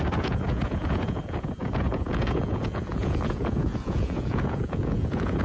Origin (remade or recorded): remade